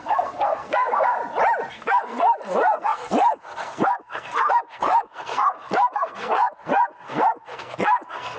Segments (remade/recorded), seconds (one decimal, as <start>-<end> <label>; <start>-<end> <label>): 0.0-1.2 remade; 1.2-1.7 recorded; 1.7-8.4 remade